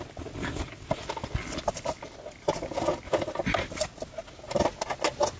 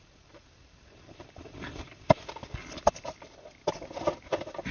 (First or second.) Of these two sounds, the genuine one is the first